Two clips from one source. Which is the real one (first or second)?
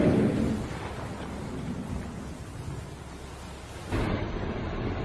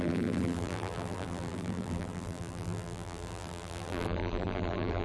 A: first